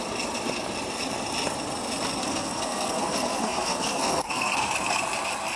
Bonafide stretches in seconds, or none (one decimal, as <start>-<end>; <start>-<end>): 0.0-2.2; 4.7-5.6